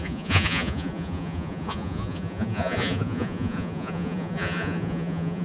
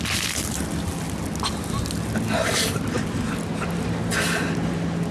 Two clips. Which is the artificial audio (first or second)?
first